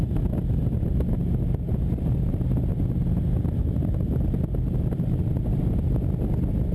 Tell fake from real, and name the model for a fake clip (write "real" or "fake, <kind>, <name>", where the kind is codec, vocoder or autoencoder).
real